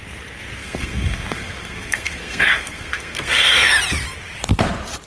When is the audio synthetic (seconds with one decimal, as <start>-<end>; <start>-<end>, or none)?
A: 0.6-3.7